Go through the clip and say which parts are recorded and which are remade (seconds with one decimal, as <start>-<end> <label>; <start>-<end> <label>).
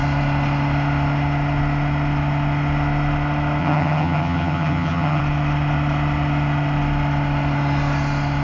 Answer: 0.0-3.6 recorded; 3.6-5.2 remade; 5.2-8.4 recorded